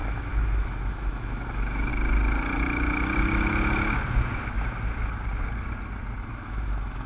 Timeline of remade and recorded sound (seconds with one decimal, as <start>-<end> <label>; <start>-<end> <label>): 0.0-1.9 remade; 1.9-6.2 recorded; 6.2-7.1 remade